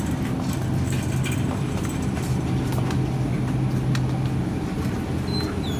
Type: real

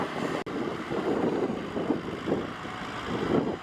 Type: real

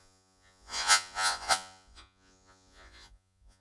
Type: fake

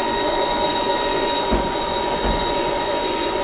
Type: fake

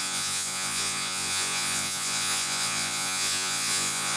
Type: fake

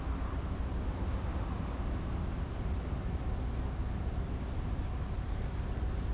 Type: real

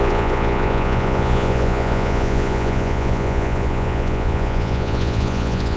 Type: fake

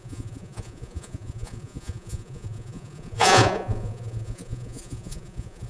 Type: fake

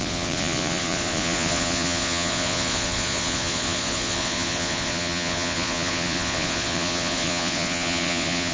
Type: fake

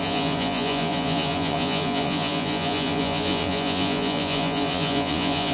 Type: fake